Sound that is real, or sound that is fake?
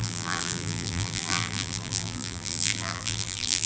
fake